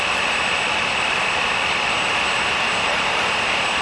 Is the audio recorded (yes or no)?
yes